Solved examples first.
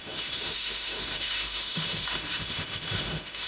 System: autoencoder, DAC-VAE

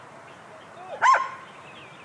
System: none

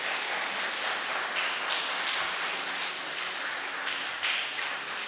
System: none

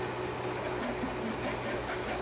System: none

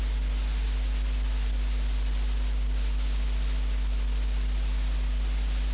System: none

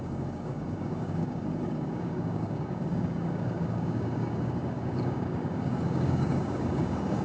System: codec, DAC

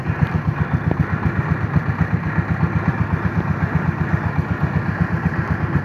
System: vocoder, BigVGAN v2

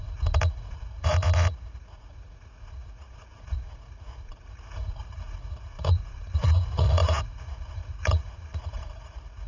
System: vocoder, Vocos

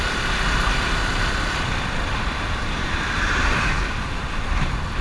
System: none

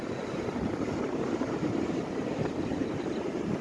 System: vocoder, BigVGAN v2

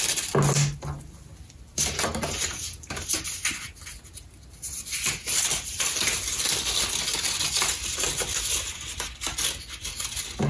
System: none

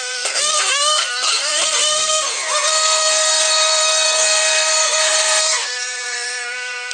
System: codec, SNAC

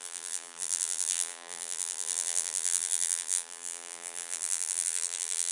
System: vocoder, BigVGAN v2